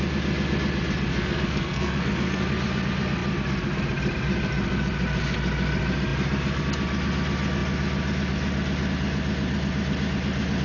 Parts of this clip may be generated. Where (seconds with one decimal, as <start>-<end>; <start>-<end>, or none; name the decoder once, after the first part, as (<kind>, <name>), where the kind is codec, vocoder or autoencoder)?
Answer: 1.1-2.4 (codec, SNAC)

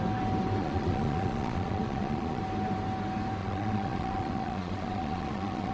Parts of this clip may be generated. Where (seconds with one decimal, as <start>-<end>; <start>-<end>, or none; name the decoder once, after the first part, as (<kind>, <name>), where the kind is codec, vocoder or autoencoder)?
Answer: 0.6-2.4 (vocoder, Vocos); 3.4-5.7

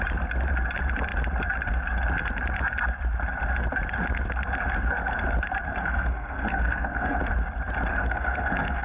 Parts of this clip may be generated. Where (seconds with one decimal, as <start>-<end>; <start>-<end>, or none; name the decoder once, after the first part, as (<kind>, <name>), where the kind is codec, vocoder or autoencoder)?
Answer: 5.8-7.2 (codec, SNAC); 7.9-8.8

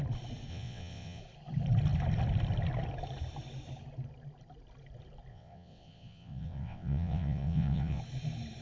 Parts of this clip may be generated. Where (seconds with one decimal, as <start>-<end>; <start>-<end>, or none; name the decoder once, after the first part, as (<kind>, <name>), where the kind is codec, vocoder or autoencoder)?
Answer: 0.5-1.2 (vocoder, WaveNeXt); 5.3-8.0

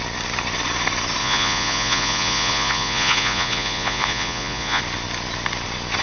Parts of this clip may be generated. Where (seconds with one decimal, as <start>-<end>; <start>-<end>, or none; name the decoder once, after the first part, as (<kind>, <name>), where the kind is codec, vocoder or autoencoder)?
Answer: 1.2-4.8 (vocoder, Vocos)

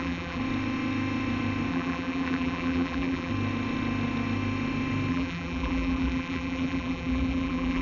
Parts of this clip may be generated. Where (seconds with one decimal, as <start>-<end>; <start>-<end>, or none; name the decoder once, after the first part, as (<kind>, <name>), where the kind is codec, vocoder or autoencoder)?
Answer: 0.0-0.4 (vocoder, BigVGAN v2); 1.7-3.3; 5.1-7.8